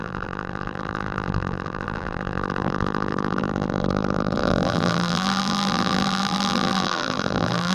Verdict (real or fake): fake